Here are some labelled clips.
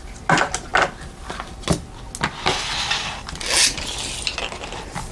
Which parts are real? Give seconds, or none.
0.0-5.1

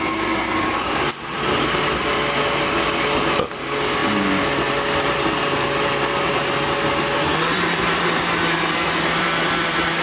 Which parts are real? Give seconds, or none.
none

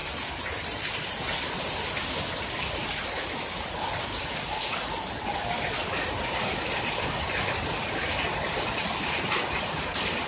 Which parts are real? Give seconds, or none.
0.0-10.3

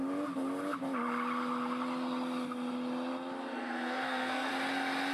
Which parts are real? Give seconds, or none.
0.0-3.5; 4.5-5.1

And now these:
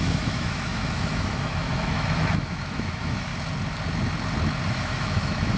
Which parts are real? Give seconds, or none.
3.3-4.7

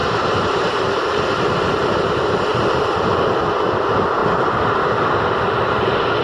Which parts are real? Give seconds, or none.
1.4-6.2